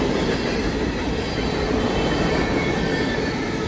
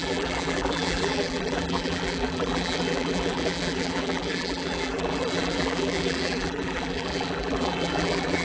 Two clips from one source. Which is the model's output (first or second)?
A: second